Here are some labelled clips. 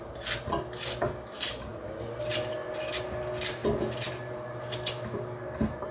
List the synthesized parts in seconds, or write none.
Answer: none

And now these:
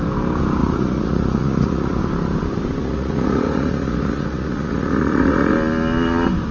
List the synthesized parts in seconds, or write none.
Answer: 0.6-2.0 (vocoder, Vocos); 2.8-5.5

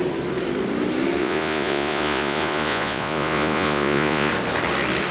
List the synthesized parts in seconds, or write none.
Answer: 1.2-4.3 (vocoder, Vocos)

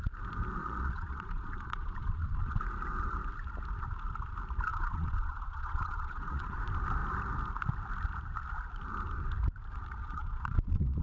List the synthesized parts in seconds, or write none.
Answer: 0.6-2.6 (vocoder, Vocos); 4.7-6.6; 10.0-11.0

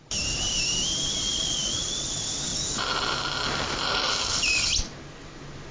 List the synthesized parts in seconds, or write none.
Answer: 1.2-2.1 (vocoder, Vocos)